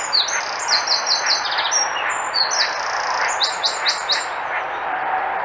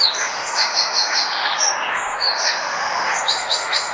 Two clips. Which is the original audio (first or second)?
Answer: first